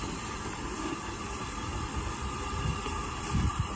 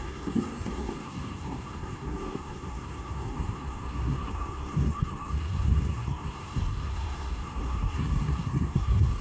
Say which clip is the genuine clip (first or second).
first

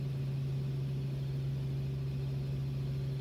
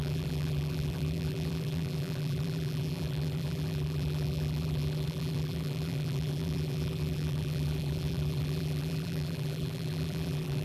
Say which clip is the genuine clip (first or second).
first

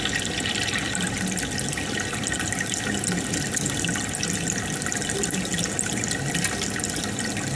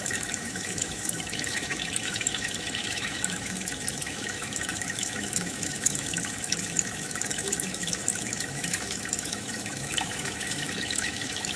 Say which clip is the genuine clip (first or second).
first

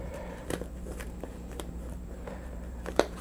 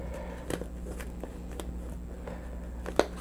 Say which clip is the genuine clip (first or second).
second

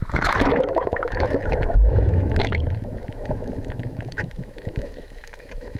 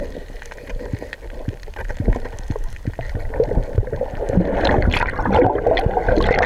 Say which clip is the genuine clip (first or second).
second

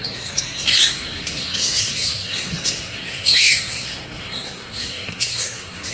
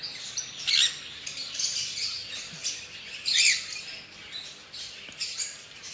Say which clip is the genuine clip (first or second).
second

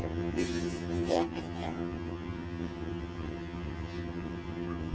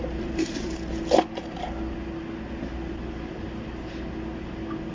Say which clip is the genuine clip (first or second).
second